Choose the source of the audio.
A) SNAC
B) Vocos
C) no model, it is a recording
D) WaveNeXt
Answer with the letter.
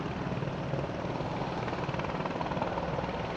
C